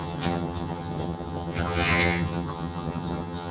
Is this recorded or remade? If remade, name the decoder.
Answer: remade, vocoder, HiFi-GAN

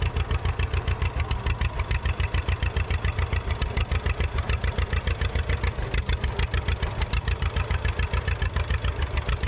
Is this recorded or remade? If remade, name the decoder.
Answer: recorded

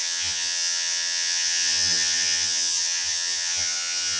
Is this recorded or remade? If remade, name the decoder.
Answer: remade, vocoder, HiFi-GAN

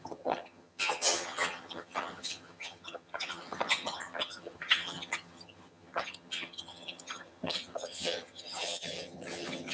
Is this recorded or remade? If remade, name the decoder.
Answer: remade, vocoder, HiFi-GAN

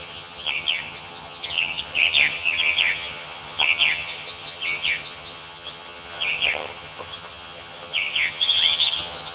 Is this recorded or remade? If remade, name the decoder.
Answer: remade, vocoder, HiFi-GAN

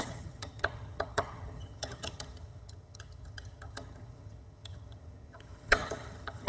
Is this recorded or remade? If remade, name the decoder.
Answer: remade, vocoder, HiFi-GAN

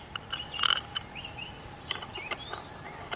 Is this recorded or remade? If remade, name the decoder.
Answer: recorded